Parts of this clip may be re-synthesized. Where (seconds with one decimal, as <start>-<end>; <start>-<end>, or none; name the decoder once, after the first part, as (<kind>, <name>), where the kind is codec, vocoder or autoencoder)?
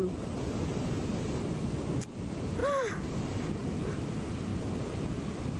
2.6-3.5 (vocoder, BigVGAN v2)